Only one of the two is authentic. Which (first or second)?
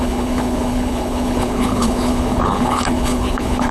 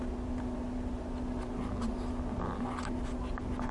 second